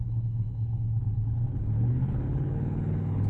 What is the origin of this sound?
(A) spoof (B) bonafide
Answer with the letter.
A